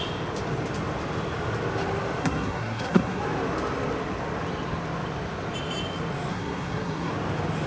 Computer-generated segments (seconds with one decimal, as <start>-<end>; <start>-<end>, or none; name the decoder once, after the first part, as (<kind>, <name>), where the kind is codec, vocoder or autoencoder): 2.2-3.2 (codec, SNAC); 6.3-7.1